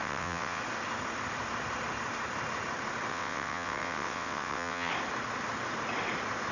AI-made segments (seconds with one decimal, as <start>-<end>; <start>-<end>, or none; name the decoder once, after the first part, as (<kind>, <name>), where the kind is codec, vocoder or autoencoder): 0.0-0.6 (vocoder, WaveNeXt); 3.1-4.9